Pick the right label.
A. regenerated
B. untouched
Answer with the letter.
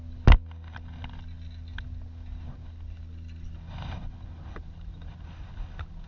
B